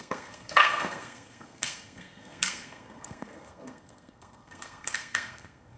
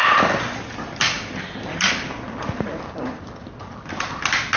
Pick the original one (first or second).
second